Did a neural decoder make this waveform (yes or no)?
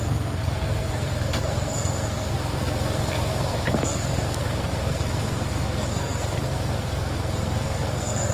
yes